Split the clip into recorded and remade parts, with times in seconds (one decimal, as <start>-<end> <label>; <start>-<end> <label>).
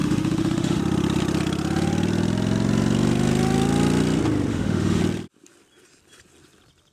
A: 0.0-0.8 remade; 0.8-4.5 recorded; 4.5-5.0 remade; 5.0-6.9 recorded